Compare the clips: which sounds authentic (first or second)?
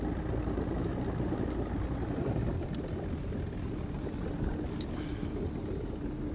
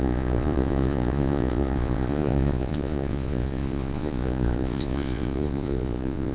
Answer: first